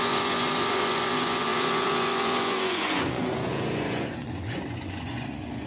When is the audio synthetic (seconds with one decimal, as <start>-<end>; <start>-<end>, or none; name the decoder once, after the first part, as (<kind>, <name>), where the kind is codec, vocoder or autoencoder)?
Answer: 0.0-5.7 (vocoder, Vocos)